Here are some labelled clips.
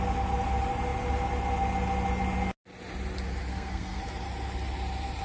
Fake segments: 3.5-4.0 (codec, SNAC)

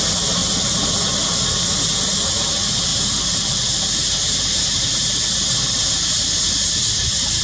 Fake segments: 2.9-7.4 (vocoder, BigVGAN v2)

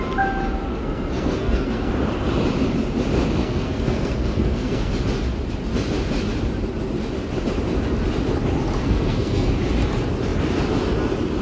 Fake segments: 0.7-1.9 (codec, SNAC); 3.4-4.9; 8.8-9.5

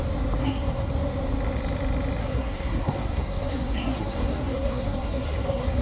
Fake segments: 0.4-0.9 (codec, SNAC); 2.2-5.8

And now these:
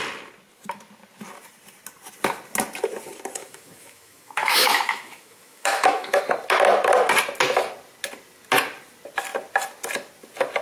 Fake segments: 3.4-6.2 (autoencoder, DAC-VAE)

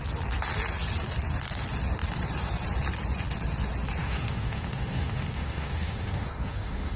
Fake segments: 4.0-7.0 (autoencoder, DAC-VAE)